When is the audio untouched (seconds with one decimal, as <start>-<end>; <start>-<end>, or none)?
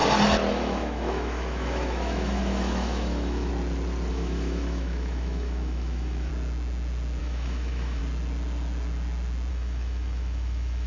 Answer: 0.0-0.5; 3.5-4.1; 6.3-7.2; 8.0-9.5